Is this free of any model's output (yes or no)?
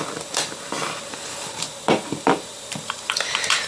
no